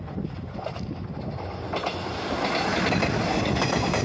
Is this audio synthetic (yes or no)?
no